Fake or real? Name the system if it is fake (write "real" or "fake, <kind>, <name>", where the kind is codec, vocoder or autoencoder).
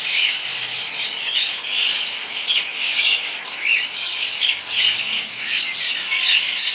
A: real